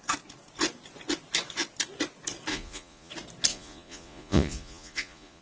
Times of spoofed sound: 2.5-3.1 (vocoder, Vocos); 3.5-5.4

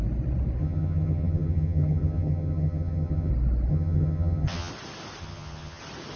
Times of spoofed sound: 0.6-3.3 (vocoder, HiFi-GAN); 3.7-4.7; 5.2-5.8

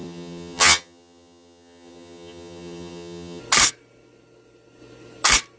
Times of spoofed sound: 0.0-3.4 (vocoder, HiFi-GAN)

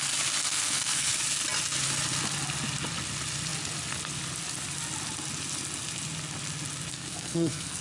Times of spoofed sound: 0.4-1.1 (codec, SNAC); 6.9-7.8

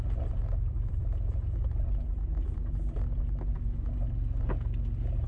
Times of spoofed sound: 0.4-1.0 (vocoder, BigVGAN v2)